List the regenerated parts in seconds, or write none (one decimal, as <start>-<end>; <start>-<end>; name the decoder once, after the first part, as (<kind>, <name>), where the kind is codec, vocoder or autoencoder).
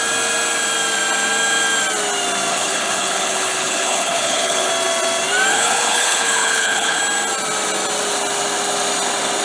2.5-4.7 (codec, HILCodec); 5.5-7.0